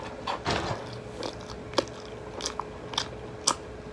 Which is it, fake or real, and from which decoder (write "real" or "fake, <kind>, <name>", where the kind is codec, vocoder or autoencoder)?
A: real